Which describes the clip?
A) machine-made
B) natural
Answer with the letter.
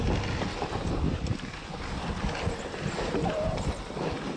B